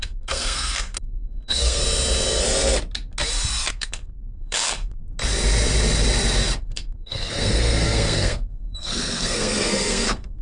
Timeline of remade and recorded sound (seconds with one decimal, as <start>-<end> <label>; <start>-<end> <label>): 0.0-1.8 remade; 1.8-3.7 recorded; 3.7-5.0 remade; 5.0-6.6 recorded; 6.6-10.4 remade